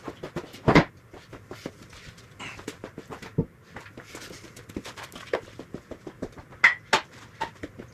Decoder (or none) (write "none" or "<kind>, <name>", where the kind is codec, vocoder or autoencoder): none